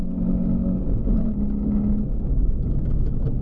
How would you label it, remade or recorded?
recorded